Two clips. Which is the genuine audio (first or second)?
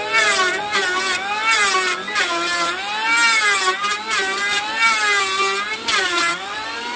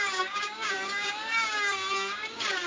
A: first